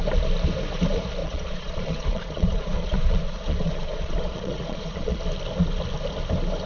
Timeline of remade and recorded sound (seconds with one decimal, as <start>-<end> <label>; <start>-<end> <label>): 0.0-1.2 recorded; 1.2-5.2 remade; 5.2-6.7 recorded